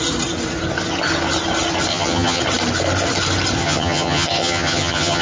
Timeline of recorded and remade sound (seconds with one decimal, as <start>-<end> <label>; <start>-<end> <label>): 0.0-1.9 recorded; 1.9-2.4 remade; 2.4-3.6 recorded; 3.6-5.2 remade